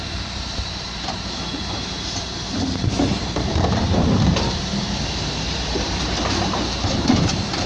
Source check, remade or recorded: remade